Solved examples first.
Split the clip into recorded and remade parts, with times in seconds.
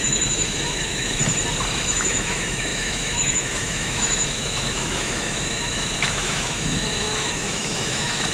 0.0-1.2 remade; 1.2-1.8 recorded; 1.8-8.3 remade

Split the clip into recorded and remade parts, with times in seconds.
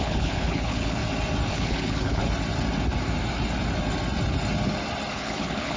0.0-1.0 remade; 1.0-1.5 recorded; 1.5-2.2 remade; 2.2-5.1 recorded; 5.1-5.8 remade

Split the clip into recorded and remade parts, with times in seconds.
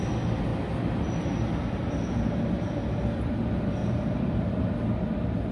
0.0-3.8 recorded; 3.8-4.7 remade; 4.7-5.5 recorded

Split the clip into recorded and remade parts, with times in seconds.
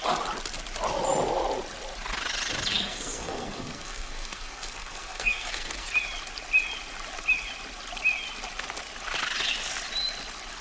0.0-2.7 recorded; 2.7-5.9 remade; 5.9-10.6 recorded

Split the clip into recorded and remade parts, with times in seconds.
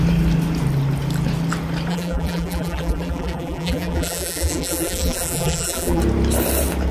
0.0-1.9 recorded; 1.9-6.0 remade; 6.0-6.9 recorded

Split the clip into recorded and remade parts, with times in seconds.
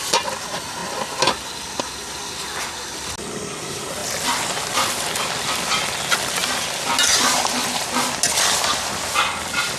0.0-6.4 recorded; 6.4-7.4 remade; 7.4-9.8 recorded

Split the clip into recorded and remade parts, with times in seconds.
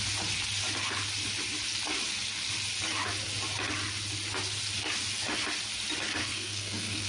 0.0-6.2 recorded; 6.2-7.1 remade